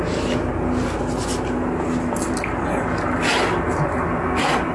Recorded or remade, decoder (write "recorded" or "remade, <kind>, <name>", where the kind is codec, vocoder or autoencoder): recorded